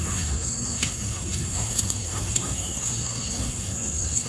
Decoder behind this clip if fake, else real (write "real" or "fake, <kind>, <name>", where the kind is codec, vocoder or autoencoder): fake, codec, SNAC